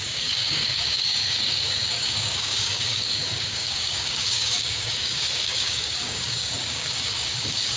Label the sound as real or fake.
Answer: fake